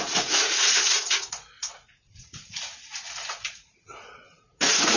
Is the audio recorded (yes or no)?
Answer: no